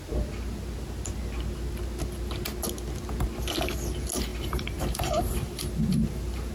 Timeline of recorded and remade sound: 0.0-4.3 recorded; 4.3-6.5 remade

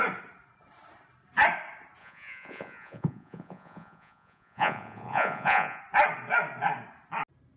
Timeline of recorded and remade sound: 0.0-2.0 recorded; 2.0-5.8 remade; 5.8-7.6 recorded

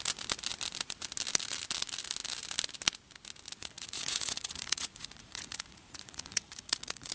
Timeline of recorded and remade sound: 0.0-3.6 recorded; 3.6-7.1 remade

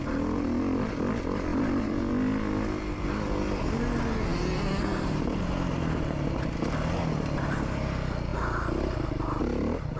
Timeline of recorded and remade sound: 0.0-1.5 recorded; 1.5-2.1 remade; 2.1-8.3 recorded; 8.3-9.4 remade; 9.4-10.0 recorded

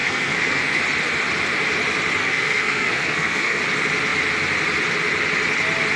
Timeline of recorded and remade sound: 0.0-0.8 remade; 0.8-2.2 recorded; 2.2-3.6 remade; 3.6-6.0 recorded

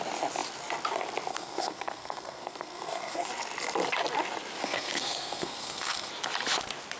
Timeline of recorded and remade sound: 0.0-1.3 recorded; 1.3-3.3 remade; 3.3-4.6 recorded; 4.6-6.1 remade; 6.1-7.0 recorded